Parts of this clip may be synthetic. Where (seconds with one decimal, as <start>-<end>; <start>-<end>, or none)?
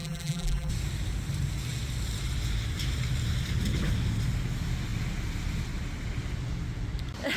0.0-0.7